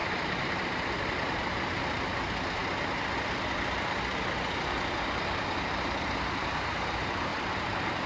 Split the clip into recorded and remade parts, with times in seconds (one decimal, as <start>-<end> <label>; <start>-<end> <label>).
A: 0.0-1.4 remade; 1.4-7.3 recorded; 7.3-8.1 remade